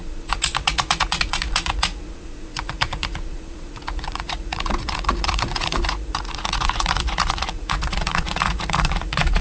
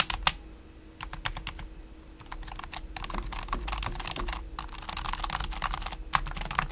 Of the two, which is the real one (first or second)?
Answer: second